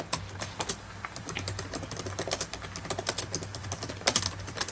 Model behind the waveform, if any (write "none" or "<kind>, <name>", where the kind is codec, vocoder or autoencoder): none